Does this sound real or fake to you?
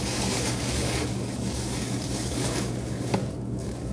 fake